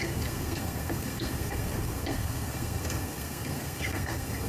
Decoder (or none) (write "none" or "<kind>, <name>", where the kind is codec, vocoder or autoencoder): codec, SNAC